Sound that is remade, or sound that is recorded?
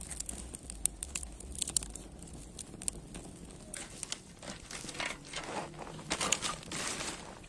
recorded